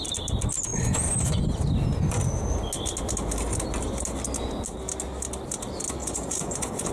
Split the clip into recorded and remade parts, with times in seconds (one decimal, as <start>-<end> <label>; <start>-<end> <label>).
0.0-0.7 recorded; 0.7-1.4 remade; 1.4-6.0 recorded; 6.0-6.9 remade